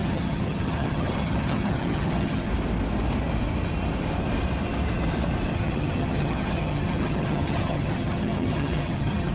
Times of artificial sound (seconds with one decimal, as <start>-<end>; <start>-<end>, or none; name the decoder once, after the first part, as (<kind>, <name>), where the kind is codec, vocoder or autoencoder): 0.0-2.5 (vocoder, HiFi-GAN); 5.5-9.3